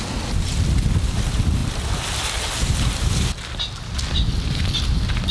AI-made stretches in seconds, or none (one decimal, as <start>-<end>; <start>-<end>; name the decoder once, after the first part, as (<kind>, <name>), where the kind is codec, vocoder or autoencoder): none